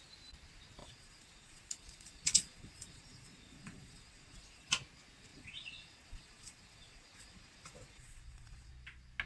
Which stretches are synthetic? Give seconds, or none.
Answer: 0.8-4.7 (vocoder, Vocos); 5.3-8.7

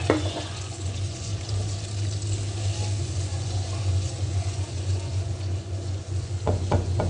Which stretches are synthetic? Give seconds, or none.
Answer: 0.0-1.3 (vocoder, Vocos); 3.0-7.1

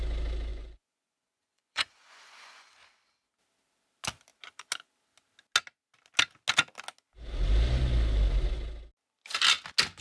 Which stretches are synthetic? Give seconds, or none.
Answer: 0.5-2.9 (vocoder, Vocos)

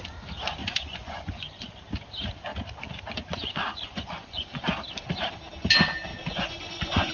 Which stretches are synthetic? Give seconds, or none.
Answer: 0.6-1.8 (vocoder, Vocos); 3.4-4.5; 6.1-7.1

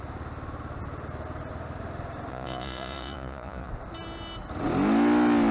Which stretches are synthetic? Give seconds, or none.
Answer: 2.3-3.7 (vocoder, Vocos)

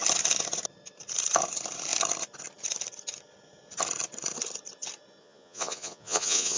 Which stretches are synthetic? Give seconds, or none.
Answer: 5.2-6.6 (vocoder, Vocos)

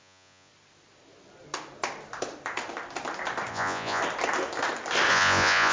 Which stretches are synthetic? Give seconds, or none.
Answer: 0.0-0.5 (vocoder, Vocos); 3.5-4.0; 5.1-5.7